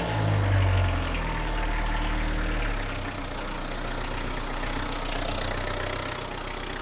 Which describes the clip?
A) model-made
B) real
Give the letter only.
B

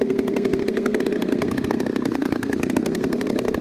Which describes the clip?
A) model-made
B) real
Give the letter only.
A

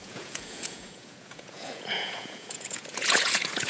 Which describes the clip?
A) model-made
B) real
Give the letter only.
A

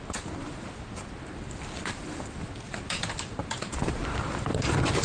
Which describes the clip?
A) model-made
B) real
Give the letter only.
B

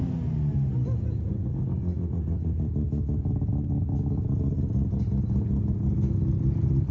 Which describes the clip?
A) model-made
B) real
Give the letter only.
B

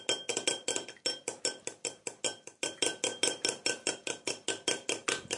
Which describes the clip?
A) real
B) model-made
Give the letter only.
A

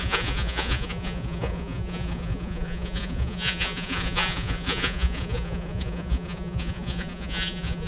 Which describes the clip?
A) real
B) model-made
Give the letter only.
B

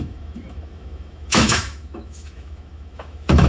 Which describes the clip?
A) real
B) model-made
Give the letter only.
B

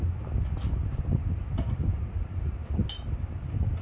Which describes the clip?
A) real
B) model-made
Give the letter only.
A